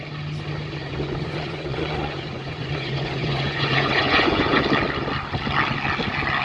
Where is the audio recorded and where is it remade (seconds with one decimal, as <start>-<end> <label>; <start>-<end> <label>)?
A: 0.0-0.8 recorded; 0.8-4.6 remade; 4.6-6.4 recorded